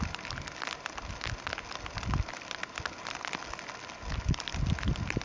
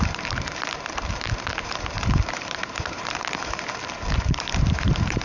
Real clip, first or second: first